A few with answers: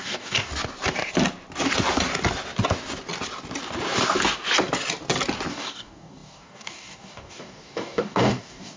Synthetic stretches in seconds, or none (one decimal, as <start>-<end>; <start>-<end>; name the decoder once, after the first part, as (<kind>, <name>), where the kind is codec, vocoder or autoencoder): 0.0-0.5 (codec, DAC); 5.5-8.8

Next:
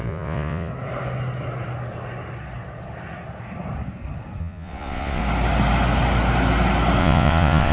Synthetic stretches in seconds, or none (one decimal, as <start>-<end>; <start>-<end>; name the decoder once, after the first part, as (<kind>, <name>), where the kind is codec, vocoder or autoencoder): 0.0-0.7 (vocoder, Vocos); 4.4-5.2; 7.0-7.7

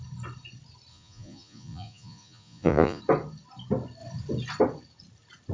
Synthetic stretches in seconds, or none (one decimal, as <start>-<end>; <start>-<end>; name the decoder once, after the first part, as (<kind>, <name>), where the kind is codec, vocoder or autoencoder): 0.9-3.0 (vocoder, Vocos)

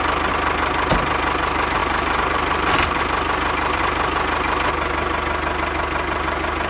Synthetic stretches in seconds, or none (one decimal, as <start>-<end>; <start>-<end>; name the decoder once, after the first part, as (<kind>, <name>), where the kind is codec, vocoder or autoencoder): 1.8-3.0 (vocoder, BigVGAN v2)

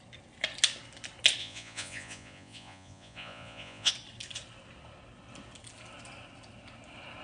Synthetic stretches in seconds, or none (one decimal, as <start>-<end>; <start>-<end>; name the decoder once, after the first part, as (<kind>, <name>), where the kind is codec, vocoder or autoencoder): 1.4-3.9 (vocoder, Vocos)

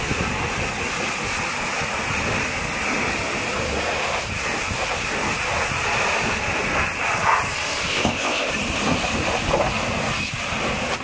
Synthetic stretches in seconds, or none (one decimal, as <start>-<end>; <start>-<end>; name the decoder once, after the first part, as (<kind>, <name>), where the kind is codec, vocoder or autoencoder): 7.9-8.5 (codec, ZipCodec)